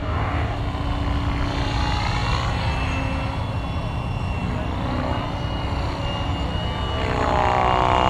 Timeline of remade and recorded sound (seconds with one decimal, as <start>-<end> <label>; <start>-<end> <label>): 0.0-0.6 remade; 0.6-8.1 recorded